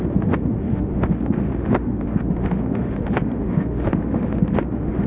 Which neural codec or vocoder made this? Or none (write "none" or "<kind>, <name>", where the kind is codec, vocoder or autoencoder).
autoencoder, DAC-VAE